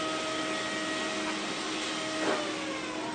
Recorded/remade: recorded